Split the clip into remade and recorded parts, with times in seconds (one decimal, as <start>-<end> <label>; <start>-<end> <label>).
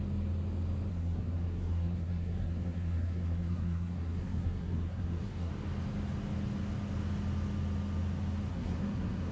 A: 0.0-0.9 recorded; 0.9-5.5 remade; 5.5-8.5 recorded; 8.5-9.3 remade